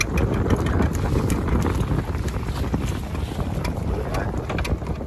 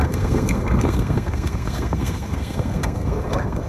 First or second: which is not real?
second